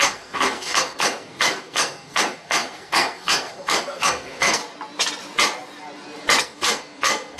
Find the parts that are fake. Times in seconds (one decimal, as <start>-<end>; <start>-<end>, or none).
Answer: 0.0-4.6; 6.4-7.4